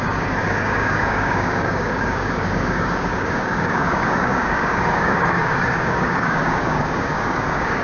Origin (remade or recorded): remade